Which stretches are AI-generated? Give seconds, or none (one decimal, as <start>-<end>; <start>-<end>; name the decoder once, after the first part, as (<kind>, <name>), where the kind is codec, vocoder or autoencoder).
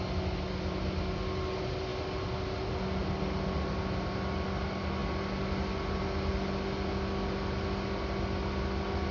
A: none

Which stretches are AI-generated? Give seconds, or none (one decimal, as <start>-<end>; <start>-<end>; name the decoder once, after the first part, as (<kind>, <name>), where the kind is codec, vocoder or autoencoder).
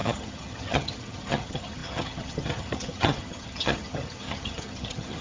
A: 0.0-5.2 (vocoder, HiFi-GAN)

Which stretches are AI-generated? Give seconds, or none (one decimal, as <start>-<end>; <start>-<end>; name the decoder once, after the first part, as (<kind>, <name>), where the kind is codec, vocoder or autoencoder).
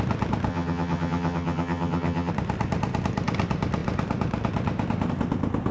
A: 0.5-2.3 (vocoder, HiFi-GAN)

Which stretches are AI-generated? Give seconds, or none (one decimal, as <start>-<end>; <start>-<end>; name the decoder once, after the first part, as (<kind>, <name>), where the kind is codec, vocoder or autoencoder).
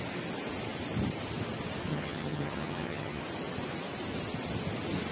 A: 1.9-3.2 (vocoder, HiFi-GAN)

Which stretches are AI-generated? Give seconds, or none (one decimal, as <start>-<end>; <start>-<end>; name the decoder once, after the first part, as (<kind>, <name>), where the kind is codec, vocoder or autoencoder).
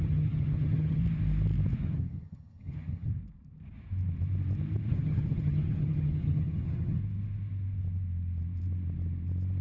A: 0.0-1.0 (vocoder, HiFi-GAN); 1.8-3.1; 4.9-7.0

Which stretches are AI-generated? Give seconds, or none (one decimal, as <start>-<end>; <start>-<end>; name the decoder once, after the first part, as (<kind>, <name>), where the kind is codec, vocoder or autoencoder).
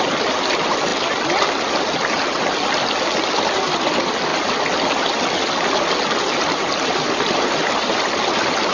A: none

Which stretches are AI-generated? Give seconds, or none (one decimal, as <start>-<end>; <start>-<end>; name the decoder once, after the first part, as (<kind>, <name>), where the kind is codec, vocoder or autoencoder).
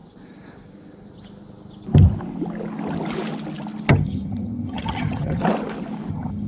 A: 3.9-5.4 (vocoder, HiFi-GAN); 6.1-6.5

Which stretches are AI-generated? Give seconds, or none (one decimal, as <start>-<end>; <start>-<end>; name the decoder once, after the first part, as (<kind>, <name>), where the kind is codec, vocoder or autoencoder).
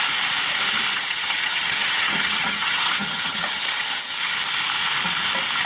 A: 0.9-4.3 (vocoder, HiFi-GAN)